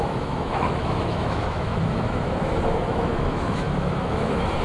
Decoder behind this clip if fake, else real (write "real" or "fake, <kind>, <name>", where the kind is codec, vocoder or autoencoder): fake, autoencoder, DAC-VAE